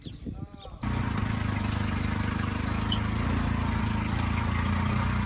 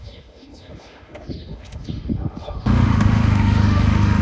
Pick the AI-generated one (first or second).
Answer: second